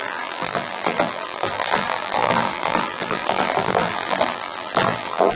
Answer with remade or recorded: remade